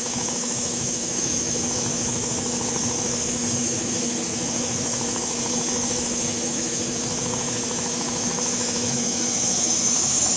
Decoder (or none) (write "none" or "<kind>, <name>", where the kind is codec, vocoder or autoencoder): autoencoder, DAC-VAE